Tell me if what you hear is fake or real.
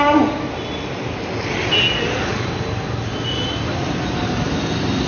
real